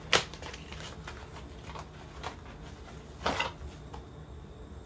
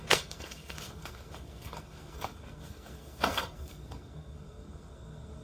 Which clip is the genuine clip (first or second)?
first